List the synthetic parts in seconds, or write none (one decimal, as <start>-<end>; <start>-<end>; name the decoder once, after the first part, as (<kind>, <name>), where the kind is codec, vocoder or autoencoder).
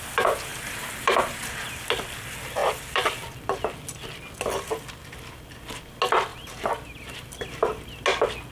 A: 0.5-1.7 (vocoder, BigVGAN v2); 2.6-3.1; 6.3-7.3